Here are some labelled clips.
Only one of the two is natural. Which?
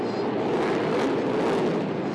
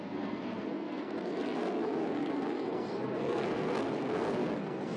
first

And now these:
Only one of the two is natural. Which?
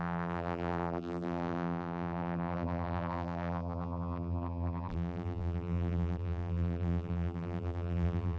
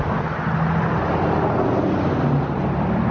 second